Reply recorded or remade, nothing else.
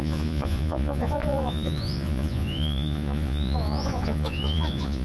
remade